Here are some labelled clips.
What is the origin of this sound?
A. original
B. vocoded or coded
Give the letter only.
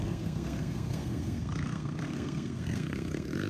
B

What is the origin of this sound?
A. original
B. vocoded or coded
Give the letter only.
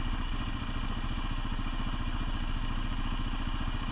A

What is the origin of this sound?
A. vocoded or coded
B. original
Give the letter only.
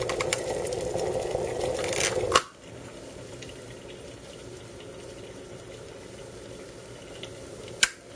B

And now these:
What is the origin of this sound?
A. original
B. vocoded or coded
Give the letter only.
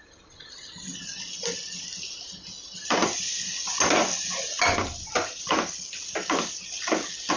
A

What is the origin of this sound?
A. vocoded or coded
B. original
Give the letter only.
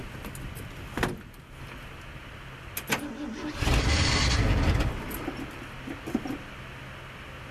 B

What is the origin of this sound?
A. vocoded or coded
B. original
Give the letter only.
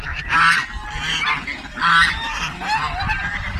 B